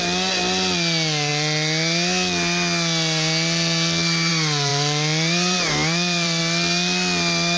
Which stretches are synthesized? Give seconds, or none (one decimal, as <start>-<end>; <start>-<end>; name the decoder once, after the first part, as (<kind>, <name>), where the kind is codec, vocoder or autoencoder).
4.7-6.4 (vocoder, BigVGAN v2)